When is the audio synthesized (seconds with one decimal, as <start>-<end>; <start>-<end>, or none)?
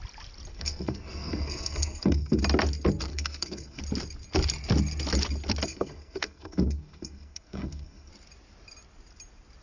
0.5-2.4; 3.1-3.8; 5.7-8.1